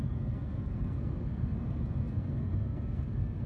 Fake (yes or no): yes